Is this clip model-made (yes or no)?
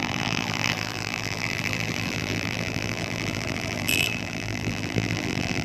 yes